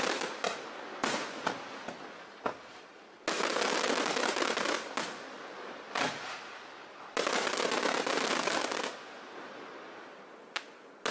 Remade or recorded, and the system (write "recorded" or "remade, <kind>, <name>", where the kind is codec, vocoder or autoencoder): recorded